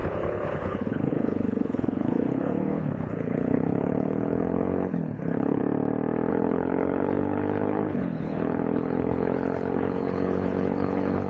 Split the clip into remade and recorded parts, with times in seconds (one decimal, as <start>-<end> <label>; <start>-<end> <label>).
0.0-5.6 remade; 5.6-6.3 recorded; 6.3-11.3 remade